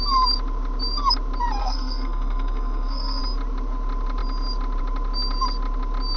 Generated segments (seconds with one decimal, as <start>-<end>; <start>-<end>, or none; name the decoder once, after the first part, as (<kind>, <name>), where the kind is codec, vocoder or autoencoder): 1.6-3.2 (codec, SNAC)